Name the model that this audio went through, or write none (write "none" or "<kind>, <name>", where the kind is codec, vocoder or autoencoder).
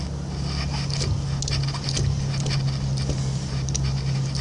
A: none